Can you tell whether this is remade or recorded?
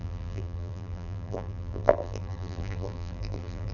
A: remade